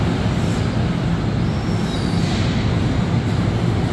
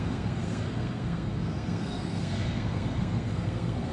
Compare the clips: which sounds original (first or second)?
first